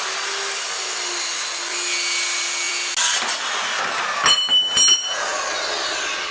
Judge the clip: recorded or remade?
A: recorded